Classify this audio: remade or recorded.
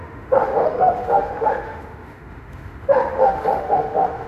remade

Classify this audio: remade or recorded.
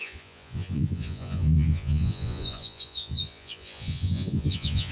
remade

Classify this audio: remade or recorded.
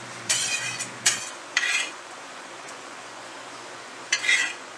remade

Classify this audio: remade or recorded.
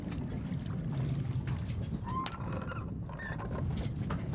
recorded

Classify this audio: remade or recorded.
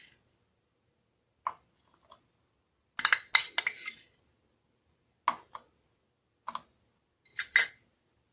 recorded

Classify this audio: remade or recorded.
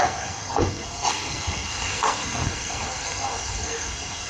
remade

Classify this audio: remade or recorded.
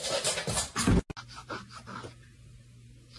recorded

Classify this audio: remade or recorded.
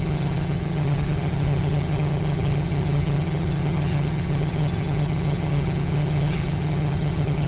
remade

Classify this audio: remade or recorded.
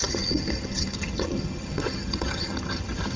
remade